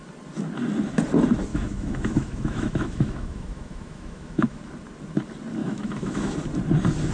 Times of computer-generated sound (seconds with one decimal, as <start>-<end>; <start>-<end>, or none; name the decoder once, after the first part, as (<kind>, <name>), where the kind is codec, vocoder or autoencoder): 1.5-4.6 (autoencoder, DAC-VAE); 5.6-6.4